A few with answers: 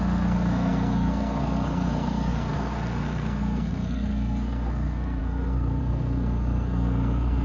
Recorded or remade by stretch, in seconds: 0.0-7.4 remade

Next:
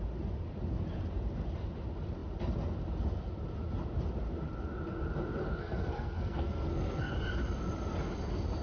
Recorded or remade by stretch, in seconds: 0.0-5.4 recorded; 5.4-7.1 remade; 7.1-8.6 recorded

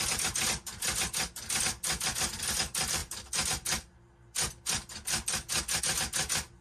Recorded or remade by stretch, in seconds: 0.0-6.6 recorded

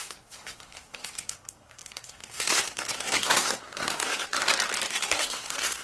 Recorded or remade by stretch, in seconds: 0.0-4.4 remade; 4.4-4.9 recorded; 4.9-5.8 remade